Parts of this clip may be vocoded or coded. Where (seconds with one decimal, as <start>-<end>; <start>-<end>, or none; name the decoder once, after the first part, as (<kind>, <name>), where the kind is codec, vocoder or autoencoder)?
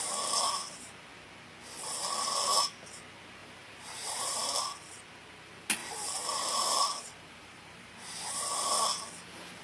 3.4-4.6 (vocoder, BigVGAN v2); 5.8-8.7